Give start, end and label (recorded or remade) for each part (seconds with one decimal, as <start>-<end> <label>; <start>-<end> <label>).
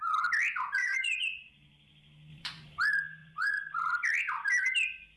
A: 0.0-0.8 recorded; 0.8-1.5 remade; 1.5-2.3 recorded; 2.3-2.8 remade; 2.8-3.2 recorded; 3.2-3.9 remade; 3.9-5.2 recorded